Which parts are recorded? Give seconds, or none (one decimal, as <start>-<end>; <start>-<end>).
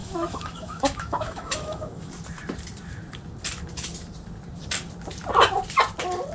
2.1-6.3